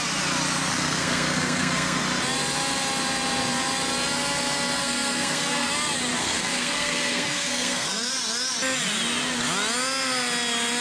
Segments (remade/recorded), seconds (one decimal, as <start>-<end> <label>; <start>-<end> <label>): 0.0-0.7 recorded; 0.7-2.0 remade; 2.0-4.8 recorded; 4.8-5.7 remade; 5.7-6.2 recorded; 6.2-8.1 remade; 8.1-10.8 recorded